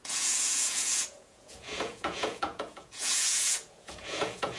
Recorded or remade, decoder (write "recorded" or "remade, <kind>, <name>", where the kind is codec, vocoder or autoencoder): remade, vocoder, Vocos